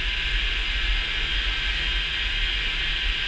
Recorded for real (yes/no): yes